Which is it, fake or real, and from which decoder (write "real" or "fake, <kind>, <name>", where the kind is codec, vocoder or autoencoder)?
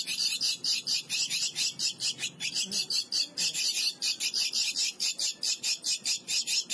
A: real